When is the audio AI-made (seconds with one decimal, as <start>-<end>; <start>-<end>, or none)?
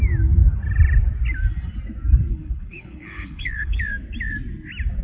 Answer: 2.3-3.8